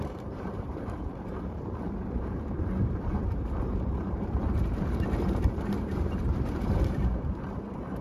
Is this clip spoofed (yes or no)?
yes